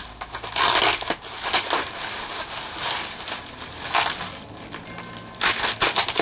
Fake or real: real